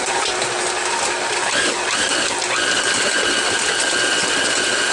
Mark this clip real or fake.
real